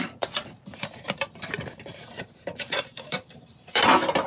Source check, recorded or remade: remade